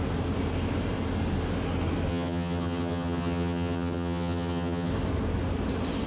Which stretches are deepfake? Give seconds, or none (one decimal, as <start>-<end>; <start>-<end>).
2.1-4.9